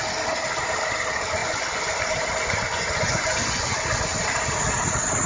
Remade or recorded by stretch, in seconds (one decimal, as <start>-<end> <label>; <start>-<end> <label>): 0.0-1.4 recorded; 1.4-2.0 remade; 2.0-2.7 recorded; 2.7-3.8 remade; 3.8-5.3 recorded